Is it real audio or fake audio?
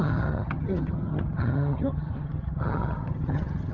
fake